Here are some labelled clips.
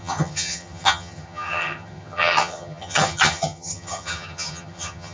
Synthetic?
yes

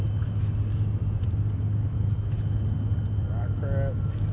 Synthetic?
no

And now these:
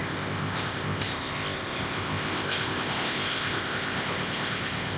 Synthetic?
yes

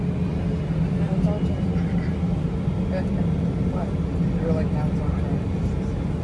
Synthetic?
no